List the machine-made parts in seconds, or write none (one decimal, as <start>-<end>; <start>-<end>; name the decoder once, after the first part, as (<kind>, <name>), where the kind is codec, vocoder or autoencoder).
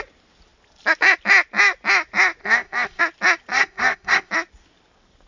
2.4-3.0 (codec, ZipCodec); 3.5-4.3